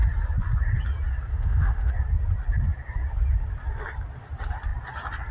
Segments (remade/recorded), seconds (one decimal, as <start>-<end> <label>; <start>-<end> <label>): 0.0-1.3 recorded; 1.3-1.9 remade; 1.9-5.3 recorded